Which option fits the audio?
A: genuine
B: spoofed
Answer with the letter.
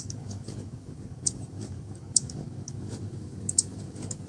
B